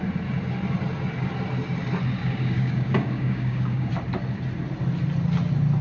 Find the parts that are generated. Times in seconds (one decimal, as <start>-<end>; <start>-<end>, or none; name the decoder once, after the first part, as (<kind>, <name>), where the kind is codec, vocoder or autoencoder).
2.2-3.9 (codec, DAC)